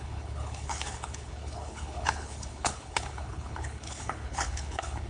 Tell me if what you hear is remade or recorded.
remade